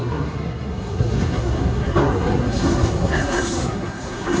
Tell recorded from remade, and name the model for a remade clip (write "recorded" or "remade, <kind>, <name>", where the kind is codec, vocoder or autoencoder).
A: remade, codec, SNAC